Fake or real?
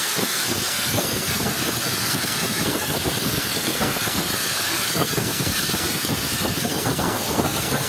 fake